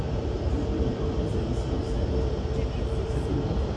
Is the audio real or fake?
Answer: fake